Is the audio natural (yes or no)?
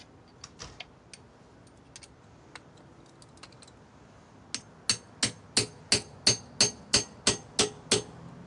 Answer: yes